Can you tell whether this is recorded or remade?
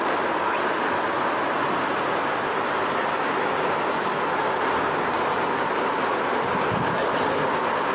recorded